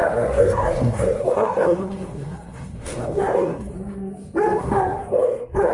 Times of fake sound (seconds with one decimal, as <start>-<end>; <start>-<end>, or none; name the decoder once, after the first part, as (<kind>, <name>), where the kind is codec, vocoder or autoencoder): 0.0-3.7 (codec, SNAC); 4.6-5.7